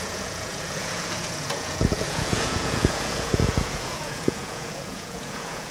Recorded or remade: remade